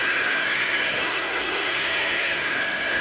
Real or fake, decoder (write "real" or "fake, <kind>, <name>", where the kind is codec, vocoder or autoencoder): fake, codec, SNAC